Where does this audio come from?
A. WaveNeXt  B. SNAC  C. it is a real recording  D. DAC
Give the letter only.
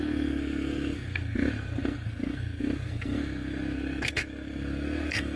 B